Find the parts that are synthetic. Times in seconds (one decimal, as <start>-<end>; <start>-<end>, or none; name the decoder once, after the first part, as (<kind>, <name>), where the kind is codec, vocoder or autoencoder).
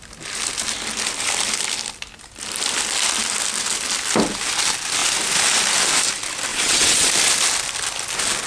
6.5-7.1 (vocoder, WaveNeXt)